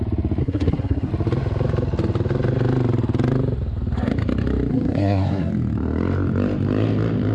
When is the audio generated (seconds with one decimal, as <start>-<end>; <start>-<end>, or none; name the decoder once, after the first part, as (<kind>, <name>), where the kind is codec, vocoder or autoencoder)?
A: 0.4-1.1 (codec, SNAC); 4.7-5.5

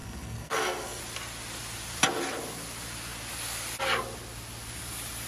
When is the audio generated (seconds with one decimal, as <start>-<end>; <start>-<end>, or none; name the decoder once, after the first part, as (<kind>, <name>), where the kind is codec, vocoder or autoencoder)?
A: 0.0-1.0 (codec, SNAC)

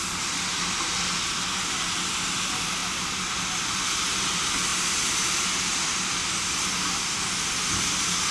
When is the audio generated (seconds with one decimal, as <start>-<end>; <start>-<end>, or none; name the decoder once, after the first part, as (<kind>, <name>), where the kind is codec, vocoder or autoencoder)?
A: none

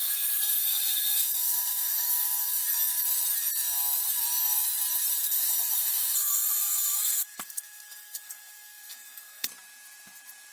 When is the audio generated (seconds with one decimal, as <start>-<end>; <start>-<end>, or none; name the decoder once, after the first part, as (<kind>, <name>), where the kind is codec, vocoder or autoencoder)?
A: 0.0-2.6 (codec, SNAC); 5.2-9.5

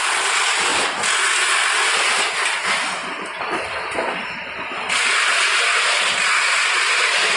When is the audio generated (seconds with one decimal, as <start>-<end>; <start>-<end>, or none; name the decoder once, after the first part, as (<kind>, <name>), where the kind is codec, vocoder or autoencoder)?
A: none

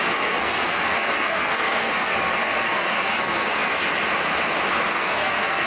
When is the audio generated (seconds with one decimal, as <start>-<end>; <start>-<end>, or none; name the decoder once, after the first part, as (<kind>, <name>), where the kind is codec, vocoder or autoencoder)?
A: 0.0-3.9 (codec, SNAC); 4.9-5.7

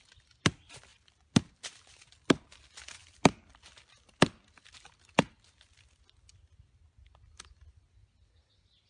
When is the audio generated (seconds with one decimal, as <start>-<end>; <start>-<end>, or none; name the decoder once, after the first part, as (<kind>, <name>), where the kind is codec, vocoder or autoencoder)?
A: none

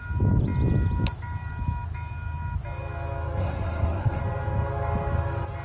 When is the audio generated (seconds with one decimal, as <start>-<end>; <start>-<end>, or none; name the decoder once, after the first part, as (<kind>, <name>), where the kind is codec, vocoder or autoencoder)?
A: 3.4-4.2 (codec, SNAC)